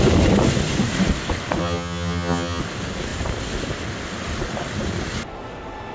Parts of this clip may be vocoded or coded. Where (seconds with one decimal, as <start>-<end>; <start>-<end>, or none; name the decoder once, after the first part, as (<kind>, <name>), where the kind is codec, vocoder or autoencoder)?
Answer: 1.6-2.6 (vocoder, HiFi-GAN)